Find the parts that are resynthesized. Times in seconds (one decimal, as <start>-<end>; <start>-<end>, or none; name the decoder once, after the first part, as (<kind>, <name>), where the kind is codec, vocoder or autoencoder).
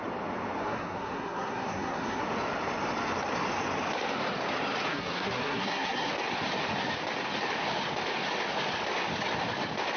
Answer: 0.6-2.2 (codec, SNAC); 4.9-6.1